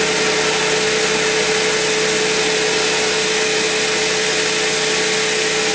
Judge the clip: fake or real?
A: real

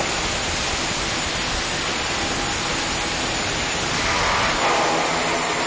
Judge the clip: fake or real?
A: real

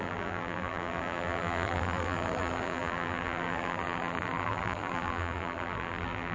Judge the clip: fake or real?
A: fake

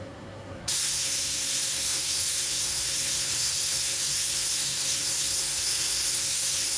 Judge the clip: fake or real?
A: fake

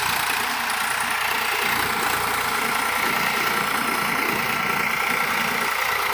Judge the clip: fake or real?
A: real